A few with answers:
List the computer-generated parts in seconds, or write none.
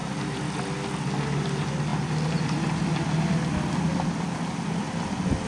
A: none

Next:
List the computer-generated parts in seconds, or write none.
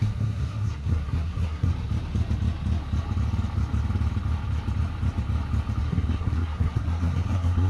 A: 0.0-1.7; 5.8-7.7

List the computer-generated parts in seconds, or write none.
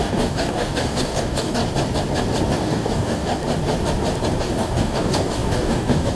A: 0.0-1.6; 2.5-3.4; 4.4-6.1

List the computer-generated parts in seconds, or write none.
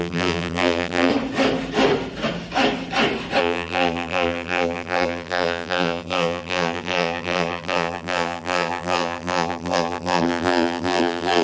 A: 0.0-1.1; 3.4-11.4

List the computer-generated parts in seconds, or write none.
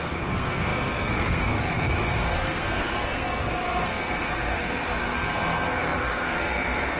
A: 0.0-7.0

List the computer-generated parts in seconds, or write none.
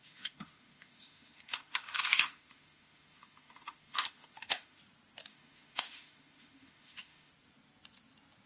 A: 0.0-4.8; 5.3-7.3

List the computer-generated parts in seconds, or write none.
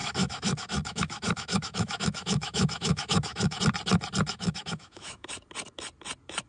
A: 0.0-3.6; 4.3-5.3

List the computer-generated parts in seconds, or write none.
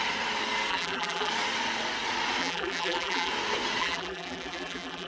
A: 0.7-1.3; 2.4-3.3; 3.8-5.1